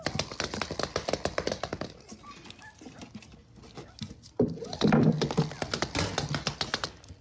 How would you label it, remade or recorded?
recorded